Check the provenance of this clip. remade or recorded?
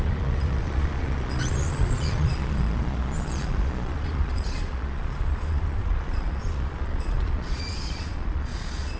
remade